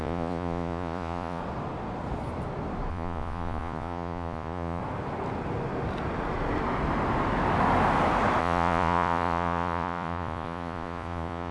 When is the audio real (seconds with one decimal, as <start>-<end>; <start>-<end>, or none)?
1.4-2.9; 4.8-8.4